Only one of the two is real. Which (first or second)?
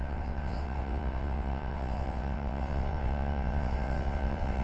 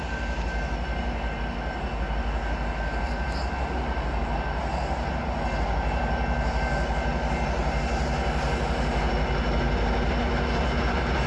second